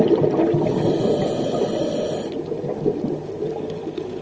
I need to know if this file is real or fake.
real